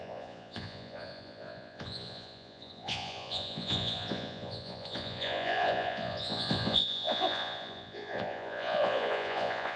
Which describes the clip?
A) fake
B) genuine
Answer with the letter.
A